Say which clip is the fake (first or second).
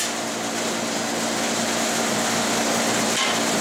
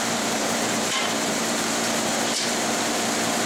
second